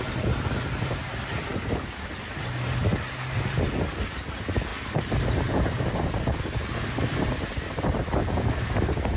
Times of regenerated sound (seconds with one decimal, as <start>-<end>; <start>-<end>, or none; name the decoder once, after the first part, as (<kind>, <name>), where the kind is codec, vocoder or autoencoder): 4.7-7.8 (vocoder, BigVGAN v2)